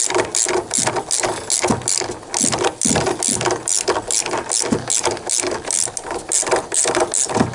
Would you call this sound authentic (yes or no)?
yes